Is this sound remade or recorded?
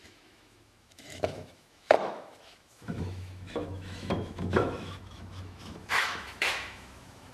remade